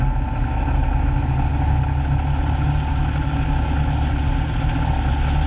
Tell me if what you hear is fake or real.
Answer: real